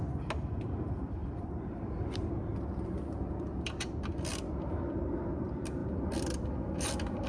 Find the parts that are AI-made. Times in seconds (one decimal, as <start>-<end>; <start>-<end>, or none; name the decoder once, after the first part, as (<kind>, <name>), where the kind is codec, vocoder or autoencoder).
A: 1.2-3.9 (vocoder, BigVGAN v2); 4.3-5.1; 5.8-7.3

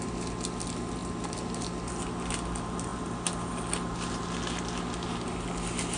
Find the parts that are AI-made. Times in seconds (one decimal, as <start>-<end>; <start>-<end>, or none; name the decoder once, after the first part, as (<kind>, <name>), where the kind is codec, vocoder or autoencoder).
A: none

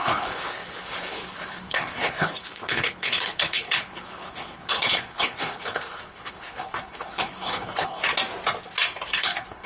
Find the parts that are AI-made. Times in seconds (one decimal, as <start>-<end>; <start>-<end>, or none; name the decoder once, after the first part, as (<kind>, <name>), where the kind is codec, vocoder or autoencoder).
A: 0.0-8.0 (codec, HILCodec); 9.1-9.7

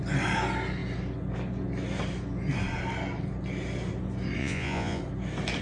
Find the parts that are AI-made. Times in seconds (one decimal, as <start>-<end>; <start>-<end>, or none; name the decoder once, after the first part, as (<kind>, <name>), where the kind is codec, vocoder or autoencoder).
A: 4.4-5.0 (vocoder, Vocos)

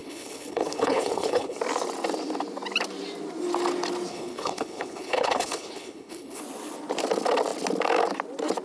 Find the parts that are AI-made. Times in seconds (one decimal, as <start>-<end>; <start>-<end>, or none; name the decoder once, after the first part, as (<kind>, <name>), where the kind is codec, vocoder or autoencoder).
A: 0.0-1.6 (codec, HILCodec); 4.1-6.4

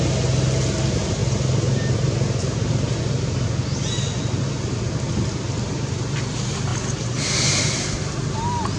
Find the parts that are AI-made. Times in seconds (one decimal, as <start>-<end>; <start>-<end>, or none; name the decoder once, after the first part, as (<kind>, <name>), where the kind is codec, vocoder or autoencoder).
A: none

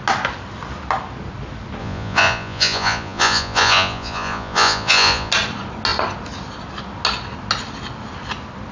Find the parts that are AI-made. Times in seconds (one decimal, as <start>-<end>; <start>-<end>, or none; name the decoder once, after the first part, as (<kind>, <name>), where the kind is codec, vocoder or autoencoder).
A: 1.8-5.3 (vocoder, Vocos)

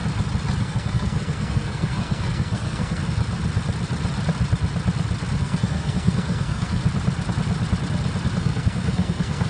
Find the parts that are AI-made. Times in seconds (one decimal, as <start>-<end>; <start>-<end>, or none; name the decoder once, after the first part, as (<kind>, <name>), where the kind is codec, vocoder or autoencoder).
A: 0.6-3.0 (codec, SNAC); 5.4-6.8; 8.4-9.5